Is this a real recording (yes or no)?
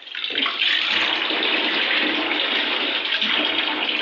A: yes